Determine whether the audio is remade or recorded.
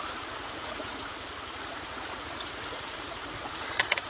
remade